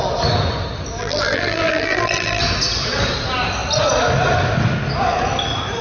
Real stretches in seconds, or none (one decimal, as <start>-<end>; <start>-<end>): 0.0-1.0; 2.4-5.8